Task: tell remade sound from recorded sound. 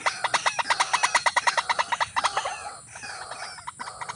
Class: recorded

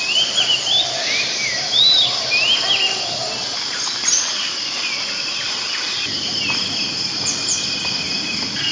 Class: recorded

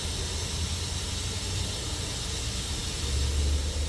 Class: recorded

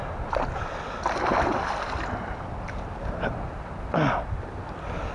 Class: recorded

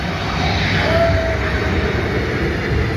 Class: recorded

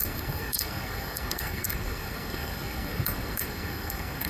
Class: remade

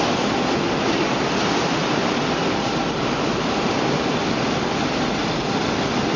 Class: recorded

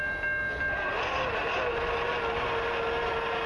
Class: recorded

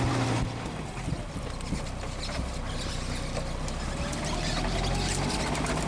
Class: recorded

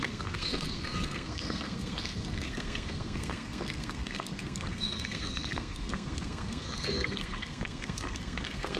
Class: remade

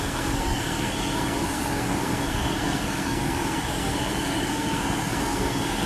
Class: remade